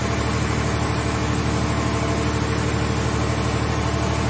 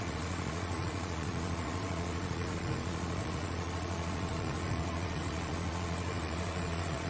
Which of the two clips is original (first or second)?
first